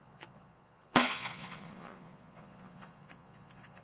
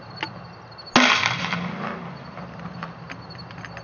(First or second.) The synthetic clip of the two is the first